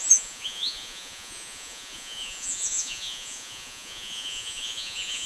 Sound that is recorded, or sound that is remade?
remade